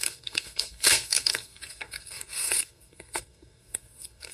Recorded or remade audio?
remade